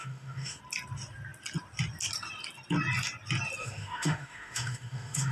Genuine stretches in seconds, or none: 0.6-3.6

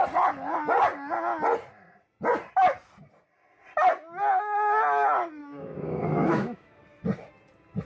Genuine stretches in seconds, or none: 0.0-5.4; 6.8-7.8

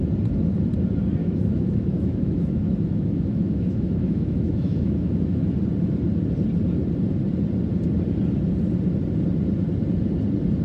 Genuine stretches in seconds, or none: 0.0-1.2; 5.5-10.6